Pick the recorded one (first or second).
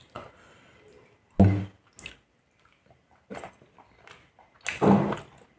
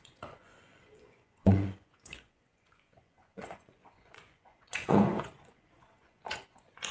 first